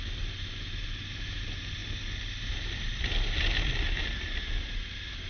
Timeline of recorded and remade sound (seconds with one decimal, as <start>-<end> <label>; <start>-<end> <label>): 0.0-5.3 recorded